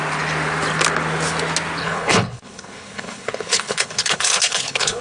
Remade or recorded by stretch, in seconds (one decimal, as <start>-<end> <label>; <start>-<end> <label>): 0.0-1.8 recorded; 1.8-5.0 remade